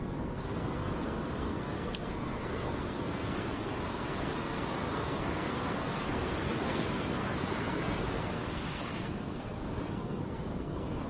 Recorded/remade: remade